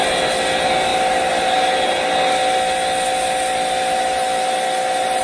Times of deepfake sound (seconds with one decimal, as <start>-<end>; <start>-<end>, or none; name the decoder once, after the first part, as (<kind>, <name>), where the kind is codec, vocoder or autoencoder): none